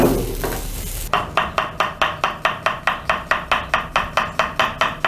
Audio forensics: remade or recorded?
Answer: recorded